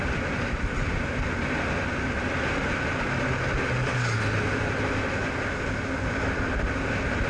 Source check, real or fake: real